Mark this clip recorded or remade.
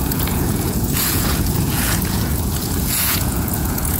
remade